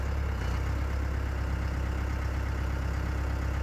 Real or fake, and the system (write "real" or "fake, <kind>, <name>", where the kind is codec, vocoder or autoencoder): real